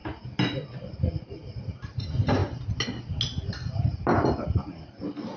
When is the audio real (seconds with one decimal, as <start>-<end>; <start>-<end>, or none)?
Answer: 0.0-5.4